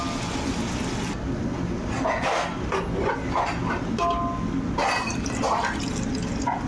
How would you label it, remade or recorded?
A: recorded